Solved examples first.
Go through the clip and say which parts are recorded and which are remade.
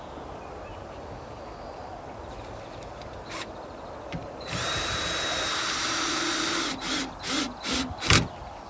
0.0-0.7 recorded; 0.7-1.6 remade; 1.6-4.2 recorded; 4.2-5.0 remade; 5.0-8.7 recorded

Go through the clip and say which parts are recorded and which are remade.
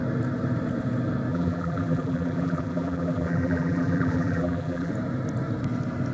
0.0-1.3 recorded; 1.3-4.9 remade; 4.9-6.1 recorded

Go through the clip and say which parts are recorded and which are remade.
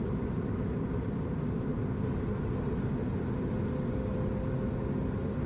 0.0-1.7 remade; 1.7-5.0 recorded; 5.0-5.5 remade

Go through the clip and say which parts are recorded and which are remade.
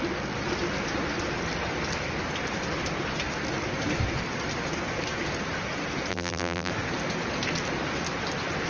0.0-6.1 recorded; 6.1-6.7 remade; 6.7-8.7 recorded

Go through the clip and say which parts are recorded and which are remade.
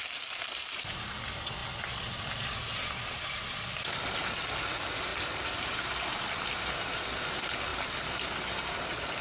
0.0-5.1 recorded; 5.1-5.9 remade; 5.9-7.7 recorded; 7.7-8.3 remade; 8.3-9.2 recorded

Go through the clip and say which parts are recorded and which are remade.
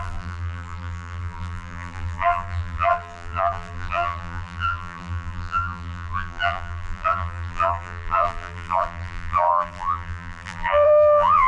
0.0-11.5 remade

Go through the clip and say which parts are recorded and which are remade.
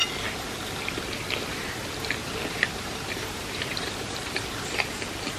0.0-2.2 recorded; 2.2-4.9 remade; 4.9-5.4 recorded